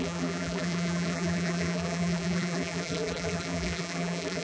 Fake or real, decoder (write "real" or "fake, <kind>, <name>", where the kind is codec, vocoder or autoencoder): fake, vocoder, BigVGAN v2